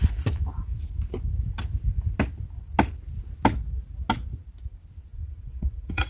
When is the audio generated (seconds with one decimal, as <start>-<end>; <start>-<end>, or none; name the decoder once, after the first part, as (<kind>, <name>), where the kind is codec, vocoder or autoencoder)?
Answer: 5.1-6.1 (vocoder, Vocos)